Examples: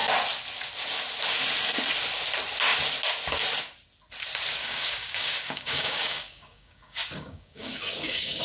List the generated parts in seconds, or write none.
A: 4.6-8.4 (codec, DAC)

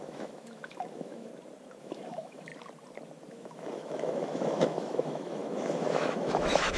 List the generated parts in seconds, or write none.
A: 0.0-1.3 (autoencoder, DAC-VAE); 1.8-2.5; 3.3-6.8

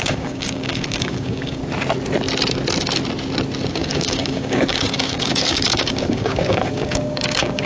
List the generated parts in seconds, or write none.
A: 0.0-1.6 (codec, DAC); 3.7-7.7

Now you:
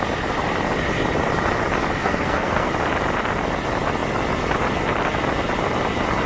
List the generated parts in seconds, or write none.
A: 2.0-2.7 (codec, SNAC)

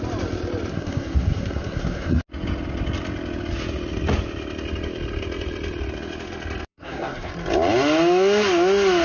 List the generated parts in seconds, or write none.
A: 0.7-2.2 (codec, SNAC); 6.7-7.3

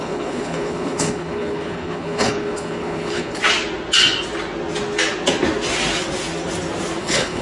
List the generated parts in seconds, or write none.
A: 0.0-3.4 (codec, HILCodec); 7.0-7.4